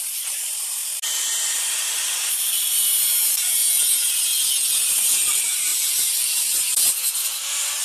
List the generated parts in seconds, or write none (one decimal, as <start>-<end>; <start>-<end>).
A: 0.0-0.8; 2.4-3.6; 4.9-7.8